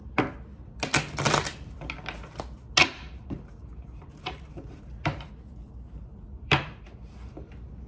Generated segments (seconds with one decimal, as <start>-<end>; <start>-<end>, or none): 2.8-7.5